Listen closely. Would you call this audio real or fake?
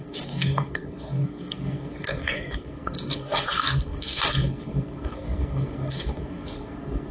fake